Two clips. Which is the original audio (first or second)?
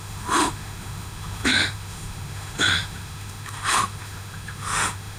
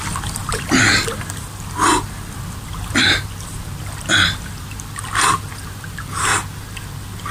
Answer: second